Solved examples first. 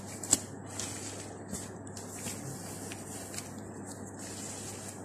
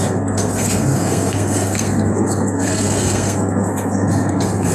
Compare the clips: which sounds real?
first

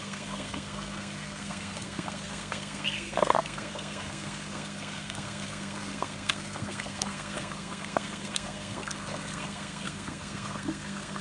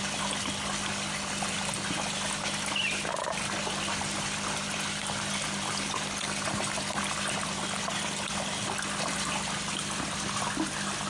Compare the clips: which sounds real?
second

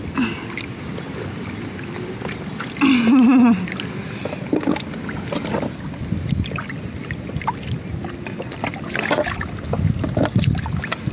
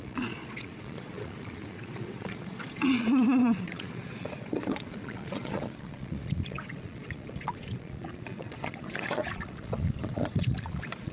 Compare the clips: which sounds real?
first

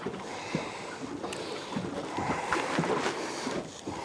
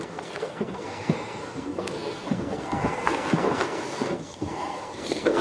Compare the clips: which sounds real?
first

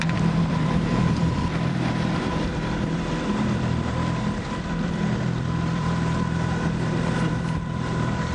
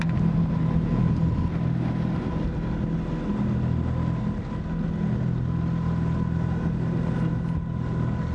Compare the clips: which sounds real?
second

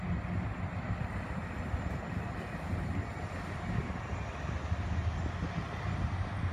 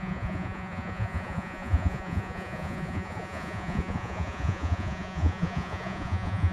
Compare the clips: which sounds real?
first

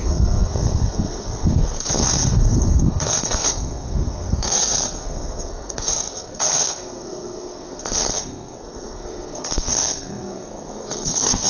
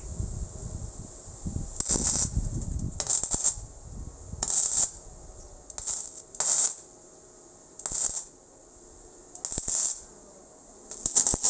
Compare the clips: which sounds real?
second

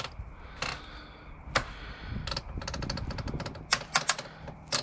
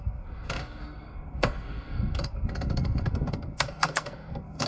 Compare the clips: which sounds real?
first